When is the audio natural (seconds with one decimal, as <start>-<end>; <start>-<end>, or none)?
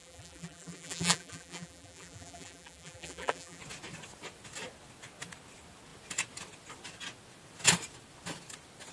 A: 3.6-8.9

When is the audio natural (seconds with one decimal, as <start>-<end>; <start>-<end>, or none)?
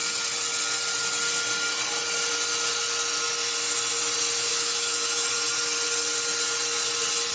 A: 0.0-4.5; 5.3-7.3